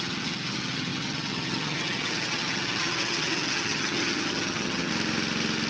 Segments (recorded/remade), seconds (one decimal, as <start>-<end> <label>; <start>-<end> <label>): 0.0-4.9 remade; 4.9-5.7 recorded